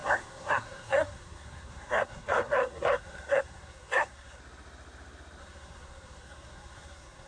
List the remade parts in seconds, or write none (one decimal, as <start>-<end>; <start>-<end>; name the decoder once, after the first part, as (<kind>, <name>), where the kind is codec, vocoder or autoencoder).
0.0-4.4 (codec, SNAC); 5.4-7.3